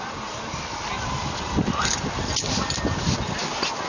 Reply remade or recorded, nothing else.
recorded